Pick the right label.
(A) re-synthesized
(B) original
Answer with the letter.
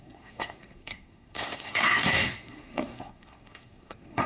A